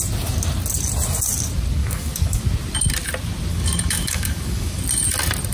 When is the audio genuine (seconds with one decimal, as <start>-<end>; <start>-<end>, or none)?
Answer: 0.0-1.8; 2.4-3.5; 4.8-5.5